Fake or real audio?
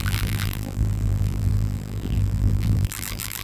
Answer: fake